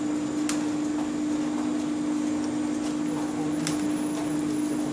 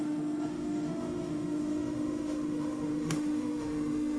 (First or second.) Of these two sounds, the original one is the first